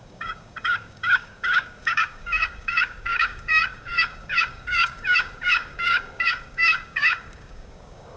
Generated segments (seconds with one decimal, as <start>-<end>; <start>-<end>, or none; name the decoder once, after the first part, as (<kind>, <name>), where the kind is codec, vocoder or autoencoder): 0.0-8.2 (codec, DAC)

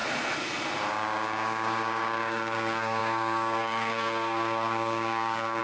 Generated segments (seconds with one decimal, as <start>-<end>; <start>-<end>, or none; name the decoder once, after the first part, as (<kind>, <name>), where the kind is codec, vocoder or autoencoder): 0.9-5.6 (codec, DAC)

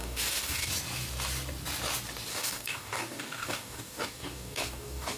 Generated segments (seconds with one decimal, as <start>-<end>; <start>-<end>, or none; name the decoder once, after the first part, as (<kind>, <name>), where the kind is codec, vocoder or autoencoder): 0.0-0.7 (codec, DAC); 2.3-5.2

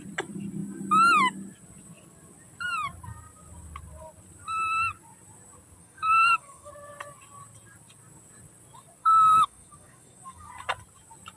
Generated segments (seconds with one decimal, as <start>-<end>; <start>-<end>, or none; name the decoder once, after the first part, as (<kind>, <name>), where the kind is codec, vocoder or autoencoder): 5.8-6.7 (codec, DAC); 9.0-10.5

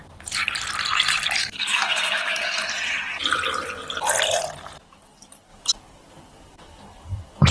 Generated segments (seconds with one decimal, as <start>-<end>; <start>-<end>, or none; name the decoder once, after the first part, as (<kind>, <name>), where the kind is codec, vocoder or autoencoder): 1.4-2.6 (codec, DAC)

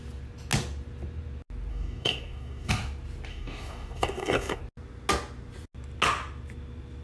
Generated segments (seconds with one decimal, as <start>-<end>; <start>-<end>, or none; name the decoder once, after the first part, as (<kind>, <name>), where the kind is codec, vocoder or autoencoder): 1.7-2.7 (codec, DAC); 3.3-4.6